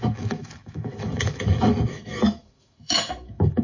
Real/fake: fake